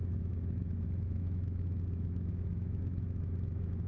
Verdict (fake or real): fake